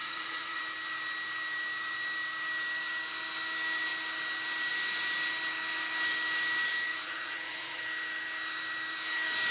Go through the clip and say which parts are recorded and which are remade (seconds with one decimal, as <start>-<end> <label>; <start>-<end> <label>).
0.0-0.6 remade; 0.6-6.9 recorded; 6.9-7.8 remade; 7.8-9.5 recorded